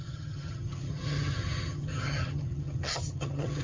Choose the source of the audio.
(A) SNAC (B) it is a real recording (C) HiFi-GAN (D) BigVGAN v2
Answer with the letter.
C